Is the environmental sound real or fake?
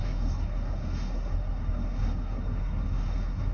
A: fake